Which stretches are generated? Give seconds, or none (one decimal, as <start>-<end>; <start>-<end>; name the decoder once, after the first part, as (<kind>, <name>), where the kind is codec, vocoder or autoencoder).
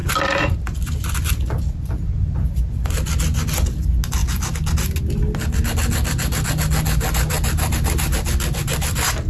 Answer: 0.0-2.9 (vocoder, BigVGAN v2)